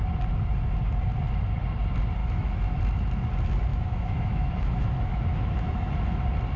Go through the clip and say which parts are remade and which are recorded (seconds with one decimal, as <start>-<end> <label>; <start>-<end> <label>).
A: 0.0-2.2 recorded; 2.2-2.8 remade; 2.8-3.7 recorded; 3.7-5.9 remade; 5.9-6.6 recorded